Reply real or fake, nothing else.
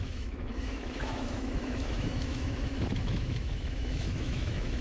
fake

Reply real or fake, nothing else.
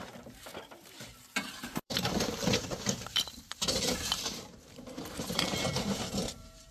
fake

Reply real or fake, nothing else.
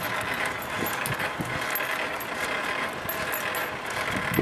real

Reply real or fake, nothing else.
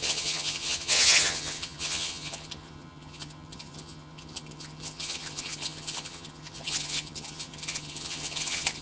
fake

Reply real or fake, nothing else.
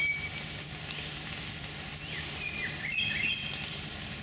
fake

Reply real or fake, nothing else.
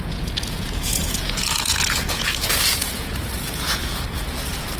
fake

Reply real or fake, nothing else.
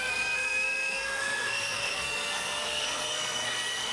fake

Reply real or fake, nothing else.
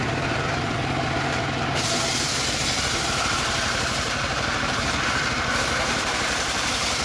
fake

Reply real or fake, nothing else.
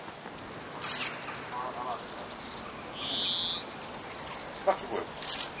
real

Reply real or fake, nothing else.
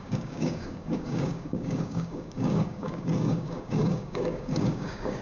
fake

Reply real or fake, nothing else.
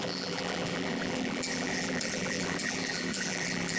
fake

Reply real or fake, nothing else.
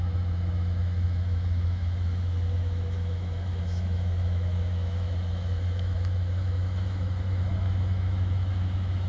fake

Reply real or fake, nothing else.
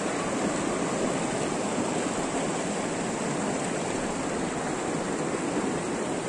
real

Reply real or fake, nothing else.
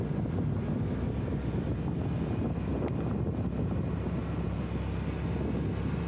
real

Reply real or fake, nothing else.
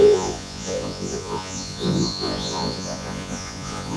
fake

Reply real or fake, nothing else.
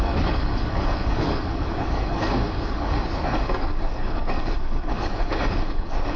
fake